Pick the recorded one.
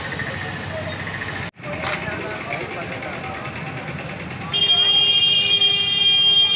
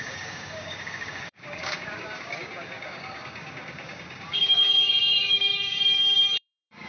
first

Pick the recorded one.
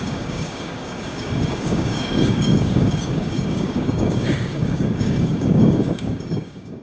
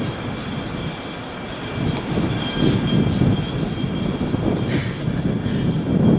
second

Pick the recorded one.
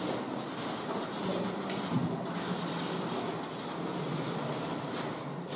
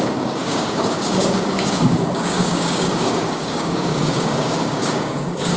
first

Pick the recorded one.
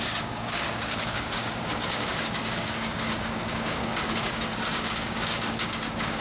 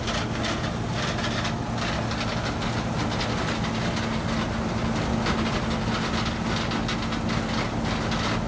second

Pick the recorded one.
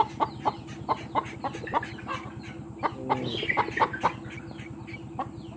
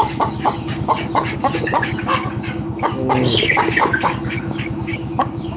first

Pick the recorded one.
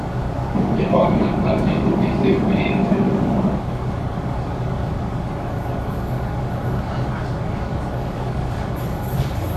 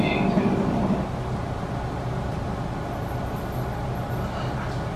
second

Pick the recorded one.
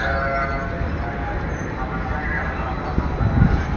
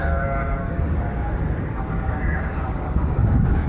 first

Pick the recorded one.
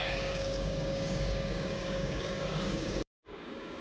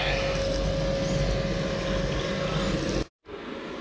second